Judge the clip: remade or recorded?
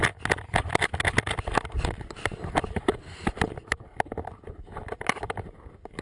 recorded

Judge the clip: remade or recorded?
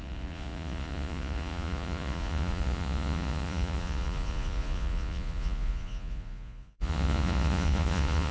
remade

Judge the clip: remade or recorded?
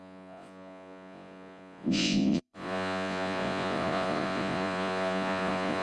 remade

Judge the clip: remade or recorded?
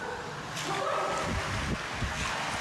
recorded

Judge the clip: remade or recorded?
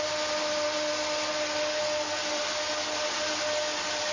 recorded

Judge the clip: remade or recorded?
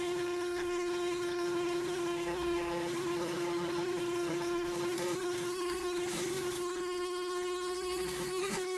remade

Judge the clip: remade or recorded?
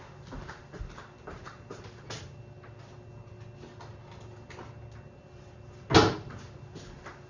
recorded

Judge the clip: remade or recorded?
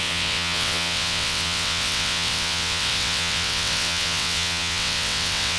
remade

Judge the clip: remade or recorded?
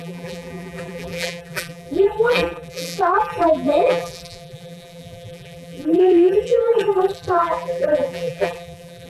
remade